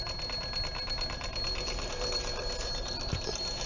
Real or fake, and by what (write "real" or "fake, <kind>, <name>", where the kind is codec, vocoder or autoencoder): real